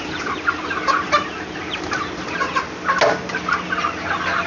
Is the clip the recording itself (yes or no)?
yes